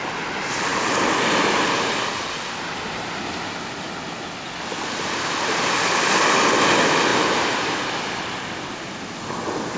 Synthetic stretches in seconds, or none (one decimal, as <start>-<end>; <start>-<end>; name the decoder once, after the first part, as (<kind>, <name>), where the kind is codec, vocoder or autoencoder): none